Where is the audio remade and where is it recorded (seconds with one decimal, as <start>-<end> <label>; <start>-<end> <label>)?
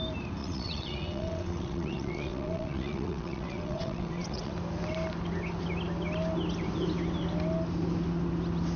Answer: 0.0-0.4 recorded; 0.4-4.5 remade; 4.5-8.8 recorded